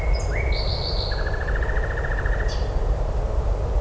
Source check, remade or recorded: recorded